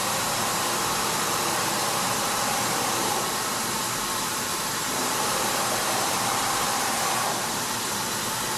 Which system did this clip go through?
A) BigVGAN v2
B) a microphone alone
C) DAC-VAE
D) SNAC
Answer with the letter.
A